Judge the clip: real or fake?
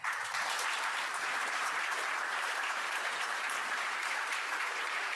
fake